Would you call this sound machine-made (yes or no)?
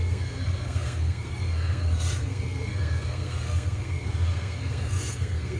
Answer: yes